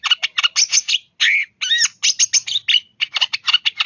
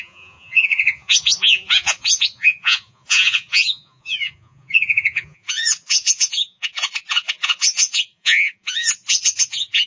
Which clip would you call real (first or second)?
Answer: first